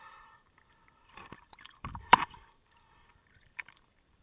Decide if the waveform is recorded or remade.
remade